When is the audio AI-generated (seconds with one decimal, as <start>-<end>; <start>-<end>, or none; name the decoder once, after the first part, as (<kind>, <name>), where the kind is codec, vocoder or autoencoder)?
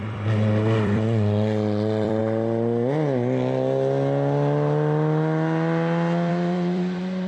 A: 0.0-2.2 (vocoder, BigVGAN v2); 6.3-7.3